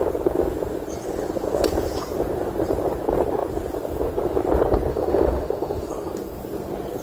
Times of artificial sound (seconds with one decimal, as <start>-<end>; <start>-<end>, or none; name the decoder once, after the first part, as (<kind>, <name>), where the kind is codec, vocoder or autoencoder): 4.9-5.9 (autoencoder, DAC-VAE)